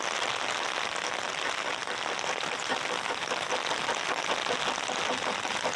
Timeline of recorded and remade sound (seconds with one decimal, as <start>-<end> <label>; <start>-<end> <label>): 0.0-5.8 recorded